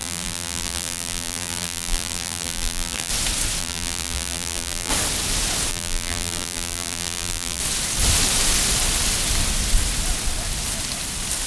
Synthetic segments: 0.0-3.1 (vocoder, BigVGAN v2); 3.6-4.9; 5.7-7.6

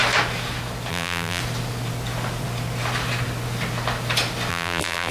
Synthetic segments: 0.9-1.4 (vocoder, BigVGAN v2); 4.5-5.1

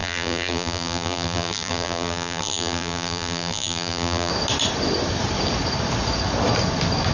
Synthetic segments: 0.0-4.3 (vocoder, BigVGAN v2)

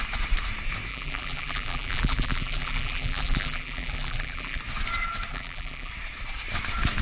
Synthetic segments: 0.9-4.6 (vocoder, BigVGAN v2); 5.3-5.9

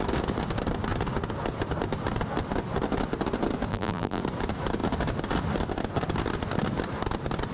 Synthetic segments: 3.7-4.2 (vocoder, BigVGAN v2)

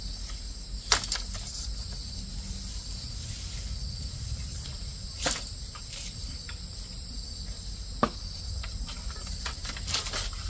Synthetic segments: none